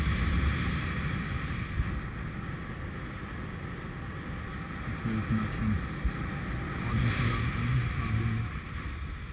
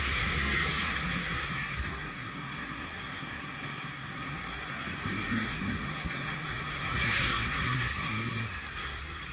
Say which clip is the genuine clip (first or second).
first